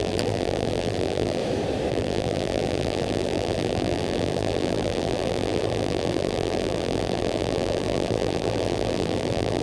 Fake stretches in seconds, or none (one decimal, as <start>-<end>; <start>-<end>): 0.0-1.4; 1.9-9.6